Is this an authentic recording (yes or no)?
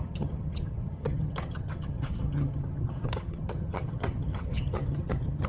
no